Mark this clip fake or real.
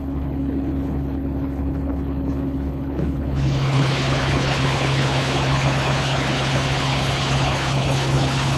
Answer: fake